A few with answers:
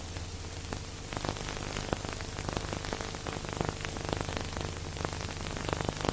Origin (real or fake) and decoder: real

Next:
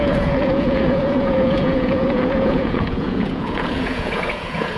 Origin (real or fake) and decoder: fake, vocoder, Vocos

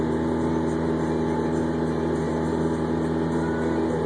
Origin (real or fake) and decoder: real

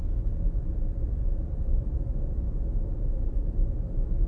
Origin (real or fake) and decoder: real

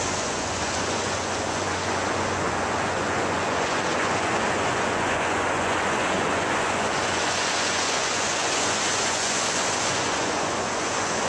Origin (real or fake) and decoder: fake, vocoder, Vocos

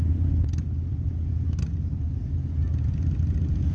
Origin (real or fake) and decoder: real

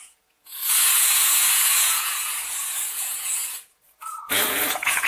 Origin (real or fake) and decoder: fake, vocoder, Vocos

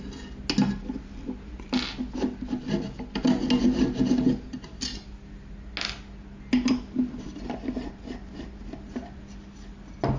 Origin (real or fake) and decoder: real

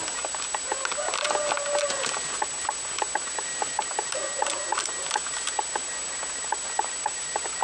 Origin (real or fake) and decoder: real